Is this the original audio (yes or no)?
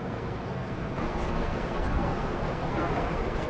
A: no